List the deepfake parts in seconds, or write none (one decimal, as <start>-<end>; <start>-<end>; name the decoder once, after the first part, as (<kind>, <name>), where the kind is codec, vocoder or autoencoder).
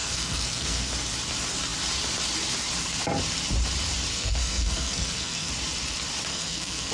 0.0-0.9 (codec, SNAC); 4.1-5.5; 6.3-6.9